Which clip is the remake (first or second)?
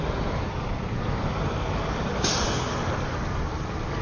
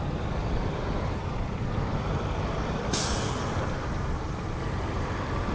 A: second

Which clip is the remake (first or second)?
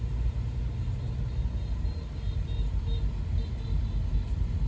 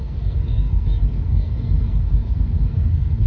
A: second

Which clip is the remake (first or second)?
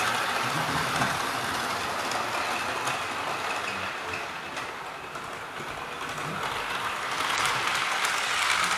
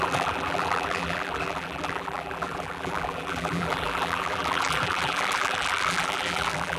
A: second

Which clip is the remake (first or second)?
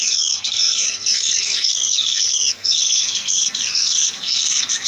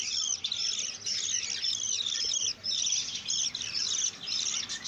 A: first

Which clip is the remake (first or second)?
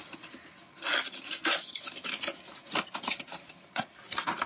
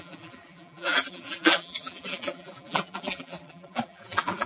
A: second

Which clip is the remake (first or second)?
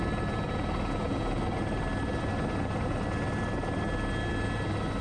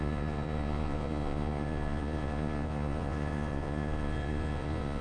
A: second